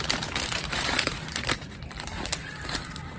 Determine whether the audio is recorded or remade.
remade